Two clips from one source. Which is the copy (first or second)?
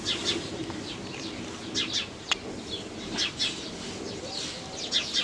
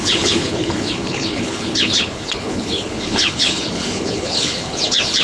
second